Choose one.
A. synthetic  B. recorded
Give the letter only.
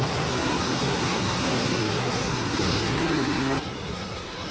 A